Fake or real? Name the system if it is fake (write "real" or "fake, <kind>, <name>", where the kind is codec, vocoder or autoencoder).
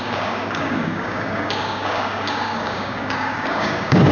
fake, codec, DAC